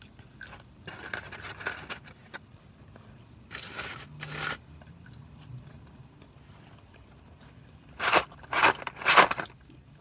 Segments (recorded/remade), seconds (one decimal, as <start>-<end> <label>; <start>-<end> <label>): 0.0-10.0 recorded